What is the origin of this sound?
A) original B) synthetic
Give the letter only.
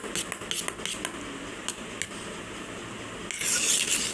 A